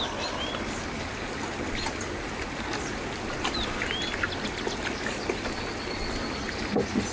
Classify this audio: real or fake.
real